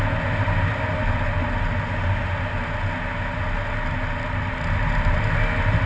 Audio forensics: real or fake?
real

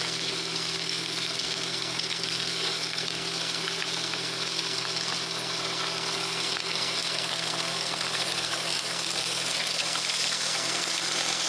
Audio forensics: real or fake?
fake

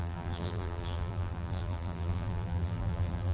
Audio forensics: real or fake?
fake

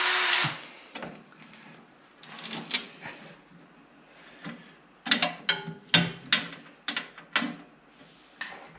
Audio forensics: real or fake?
real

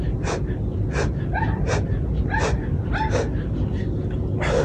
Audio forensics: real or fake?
real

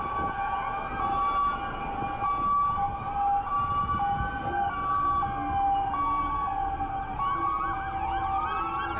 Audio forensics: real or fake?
real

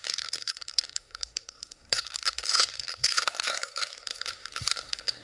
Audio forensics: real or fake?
fake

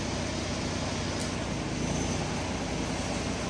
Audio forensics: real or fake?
real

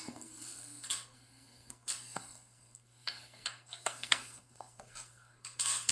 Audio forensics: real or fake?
fake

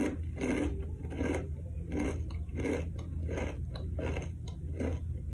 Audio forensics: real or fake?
real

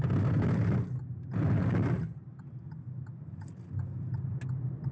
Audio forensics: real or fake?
real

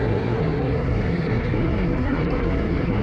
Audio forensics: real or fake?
fake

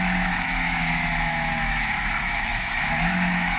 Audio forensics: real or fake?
fake